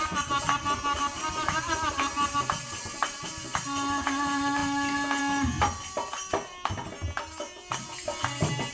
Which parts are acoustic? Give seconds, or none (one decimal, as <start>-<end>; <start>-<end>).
0.0-8.7